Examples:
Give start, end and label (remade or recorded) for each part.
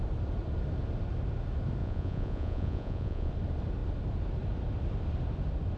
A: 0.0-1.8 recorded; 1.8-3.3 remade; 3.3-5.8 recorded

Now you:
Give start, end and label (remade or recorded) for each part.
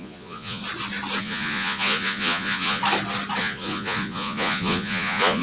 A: 0.0-0.6 remade; 0.6-1.2 recorded; 1.2-2.8 remade; 2.8-3.4 recorded; 3.4-5.4 remade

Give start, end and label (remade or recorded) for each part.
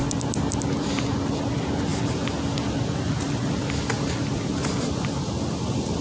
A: 0.0-6.0 recorded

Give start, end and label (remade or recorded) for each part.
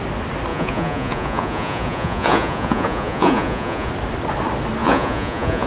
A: 0.0-0.5 recorded; 0.5-3.9 remade; 3.9-4.8 recorded; 4.8-5.7 remade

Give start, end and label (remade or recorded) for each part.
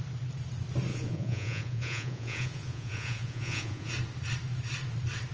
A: 0.0-0.9 recorded; 0.9-3.9 remade; 3.9-5.3 recorded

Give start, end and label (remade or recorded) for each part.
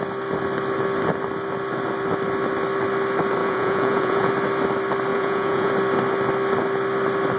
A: 0.0-3.4 recorded; 3.4-4.3 remade; 4.3-5.1 recorded; 5.1-5.7 remade; 5.7-7.4 recorded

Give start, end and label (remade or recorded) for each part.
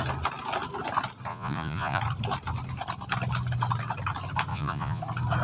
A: 0.0-1.3 recorded; 1.3-2.0 remade; 2.0-4.5 recorded; 4.5-5.0 remade; 5.0-5.4 recorded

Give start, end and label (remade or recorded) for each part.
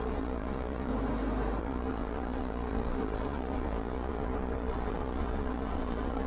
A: 0.0-0.9 remade; 0.9-1.6 recorded; 1.6-6.3 remade